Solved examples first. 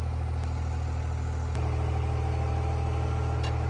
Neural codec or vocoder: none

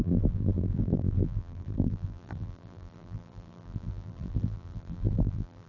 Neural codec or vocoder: vocoder, BigVGAN v2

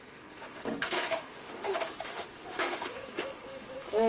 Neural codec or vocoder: autoencoder, DAC-VAE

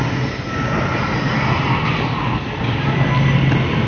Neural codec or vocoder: none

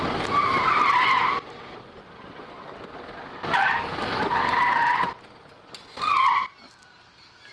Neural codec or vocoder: none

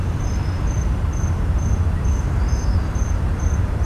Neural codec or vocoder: vocoder, BigVGAN v2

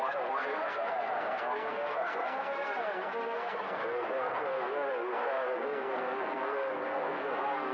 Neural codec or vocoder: codec, SNAC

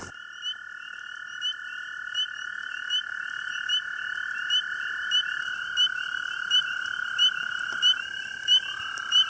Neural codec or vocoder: none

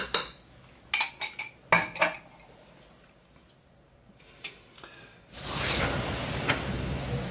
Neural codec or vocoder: none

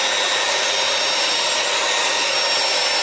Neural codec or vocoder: none